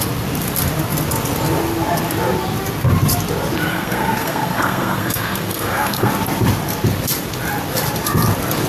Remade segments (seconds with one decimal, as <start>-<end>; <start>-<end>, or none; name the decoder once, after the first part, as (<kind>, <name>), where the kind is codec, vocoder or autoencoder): 3.7-6.1 (codec, SNAC)